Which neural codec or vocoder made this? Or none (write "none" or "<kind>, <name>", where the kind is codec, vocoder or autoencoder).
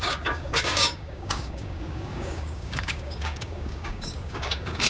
codec, DAC